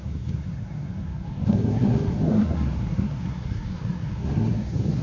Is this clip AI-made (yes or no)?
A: yes